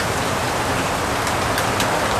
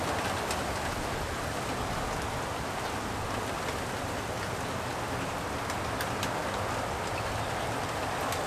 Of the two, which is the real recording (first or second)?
second